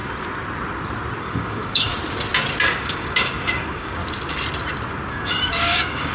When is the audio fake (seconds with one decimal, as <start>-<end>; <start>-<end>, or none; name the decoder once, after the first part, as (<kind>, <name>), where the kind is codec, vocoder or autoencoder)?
1.2-1.9 (codec, DAC); 2.8-4.0; 5.1-6.1

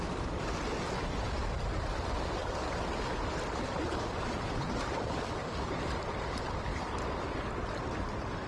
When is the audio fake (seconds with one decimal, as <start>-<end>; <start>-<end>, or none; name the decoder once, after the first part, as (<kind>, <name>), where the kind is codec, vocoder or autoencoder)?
none

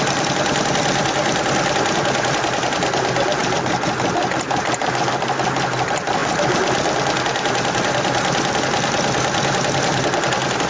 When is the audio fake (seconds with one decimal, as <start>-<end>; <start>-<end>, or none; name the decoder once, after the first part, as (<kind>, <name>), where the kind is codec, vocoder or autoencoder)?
none

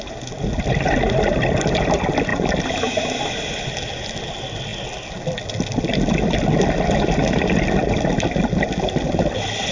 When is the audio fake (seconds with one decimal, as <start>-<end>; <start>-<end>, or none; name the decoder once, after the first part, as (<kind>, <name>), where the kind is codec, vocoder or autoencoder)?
none

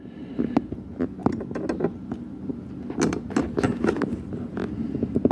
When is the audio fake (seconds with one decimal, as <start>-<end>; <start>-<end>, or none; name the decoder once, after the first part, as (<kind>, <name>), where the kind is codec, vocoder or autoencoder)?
none

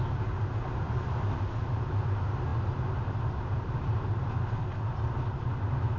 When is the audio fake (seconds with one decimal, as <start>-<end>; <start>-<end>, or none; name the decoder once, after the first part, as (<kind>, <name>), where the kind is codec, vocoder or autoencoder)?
none